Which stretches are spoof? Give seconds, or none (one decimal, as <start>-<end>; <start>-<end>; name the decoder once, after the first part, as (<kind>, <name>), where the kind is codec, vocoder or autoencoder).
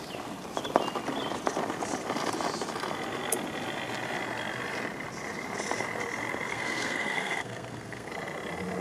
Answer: 6.5-8.1 (codec, SNAC)